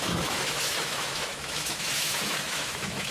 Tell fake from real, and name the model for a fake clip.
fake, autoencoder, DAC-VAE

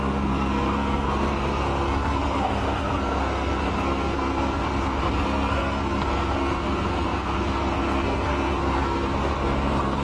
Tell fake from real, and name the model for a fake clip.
fake, codec, SNAC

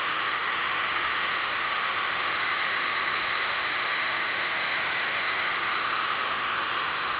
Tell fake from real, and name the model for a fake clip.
fake, autoencoder, DAC-VAE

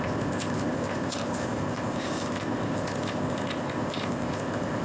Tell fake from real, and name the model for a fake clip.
fake, codec, ZipCodec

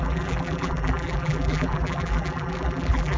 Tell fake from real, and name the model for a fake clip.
fake, vocoder, BigVGAN v2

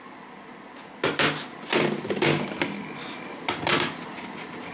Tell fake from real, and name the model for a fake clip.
real